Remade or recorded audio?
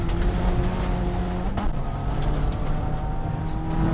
recorded